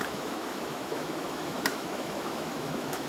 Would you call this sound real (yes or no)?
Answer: no